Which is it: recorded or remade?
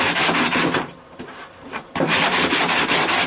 recorded